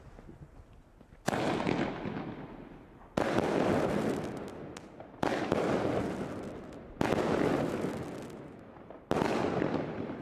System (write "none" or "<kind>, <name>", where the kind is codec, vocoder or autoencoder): none